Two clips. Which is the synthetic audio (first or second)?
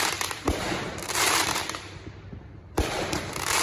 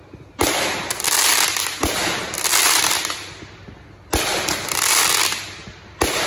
first